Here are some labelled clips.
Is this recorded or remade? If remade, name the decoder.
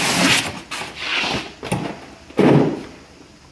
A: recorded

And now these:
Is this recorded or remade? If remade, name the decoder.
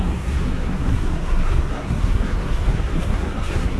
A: remade, codec, SNAC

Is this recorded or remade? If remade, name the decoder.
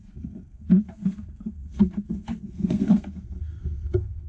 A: remade, codec, SNAC